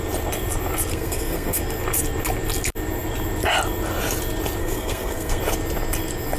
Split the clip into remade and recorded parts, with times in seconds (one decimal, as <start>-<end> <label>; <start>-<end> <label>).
0.0-0.9 recorded; 0.9-1.6 remade; 1.6-4.6 recorded; 4.6-5.4 remade; 5.4-6.4 recorded